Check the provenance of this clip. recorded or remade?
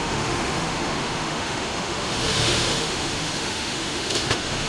remade